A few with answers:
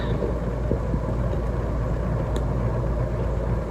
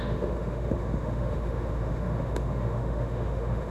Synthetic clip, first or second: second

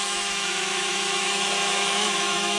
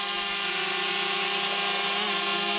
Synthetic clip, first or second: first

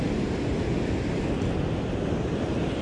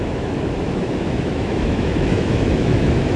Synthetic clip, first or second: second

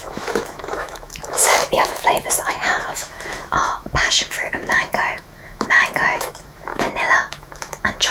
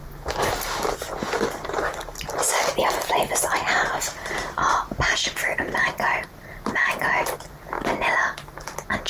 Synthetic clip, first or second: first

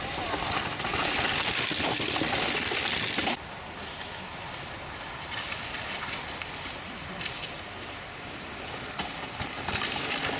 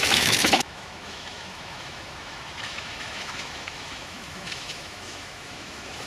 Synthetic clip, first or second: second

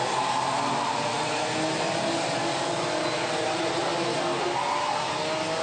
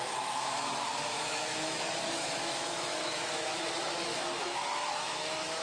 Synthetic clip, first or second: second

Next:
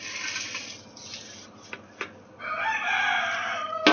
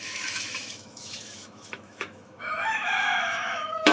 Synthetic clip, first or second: second